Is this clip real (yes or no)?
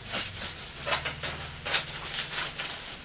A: yes